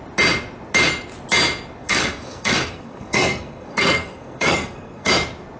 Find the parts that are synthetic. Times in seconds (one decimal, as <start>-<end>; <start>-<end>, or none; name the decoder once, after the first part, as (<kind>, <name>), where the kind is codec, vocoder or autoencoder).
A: 1.8-5.1 (codec, SNAC)